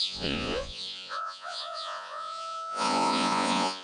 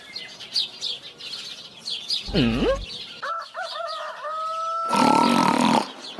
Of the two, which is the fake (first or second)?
first